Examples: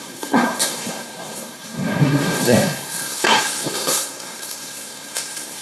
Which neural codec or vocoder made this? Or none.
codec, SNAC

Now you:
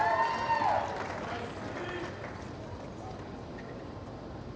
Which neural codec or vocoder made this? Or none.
none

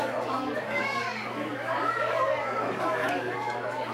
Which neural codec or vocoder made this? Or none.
codec, DAC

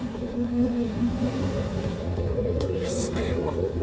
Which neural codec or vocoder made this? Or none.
codec, SNAC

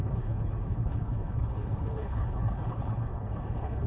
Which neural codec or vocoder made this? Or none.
codec, HILCodec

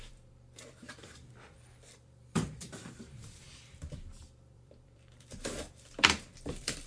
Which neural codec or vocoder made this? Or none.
vocoder, BigVGAN v2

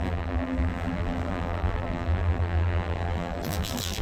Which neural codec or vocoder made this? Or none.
vocoder, BigVGAN v2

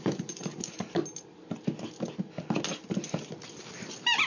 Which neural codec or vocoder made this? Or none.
none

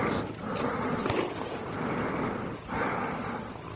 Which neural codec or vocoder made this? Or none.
none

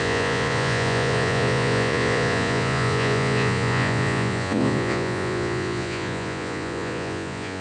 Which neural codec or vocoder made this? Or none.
vocoder, Vocos